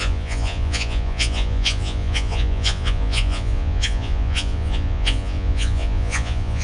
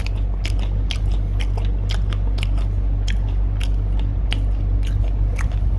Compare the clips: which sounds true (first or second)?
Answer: second